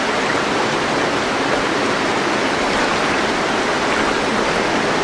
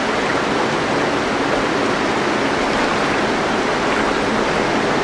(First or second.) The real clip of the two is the second